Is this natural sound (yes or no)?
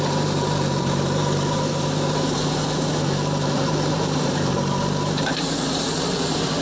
no